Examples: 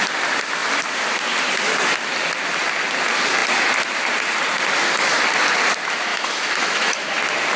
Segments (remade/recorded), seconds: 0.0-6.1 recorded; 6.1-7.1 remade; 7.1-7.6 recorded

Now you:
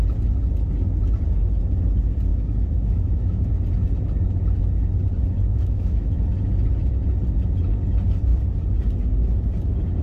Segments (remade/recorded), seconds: 0.0-2.3 recorded; 2.3-3.5 remade; 3.5-5.5 recorded; 5.5-6.2 remade; 6.2-10.0 recorded

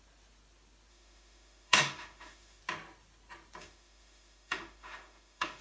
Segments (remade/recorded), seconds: 0.0-0.9 recorded; 0.9-2.6 remade; 2.6-3.6 recorded; 3.6-5.6 remade

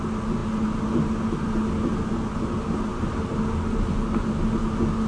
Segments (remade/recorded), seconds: 0.0-5.1 recorded

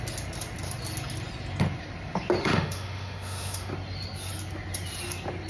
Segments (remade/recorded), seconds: 0.0-2.4 recorded; 2.4-3.7 remade; 3.7-5.5 recorded

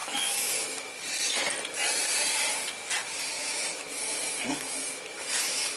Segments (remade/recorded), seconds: 0.0-0.9 remade; 0.9-3.0 recorded; 3.0-5.8 remade

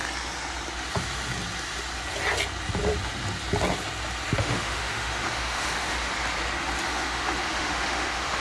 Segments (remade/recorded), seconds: 0.0-4.4 recorded; 4.4-6.1 remade; 6.1-6.9 recorded; 6.9-8.4 remade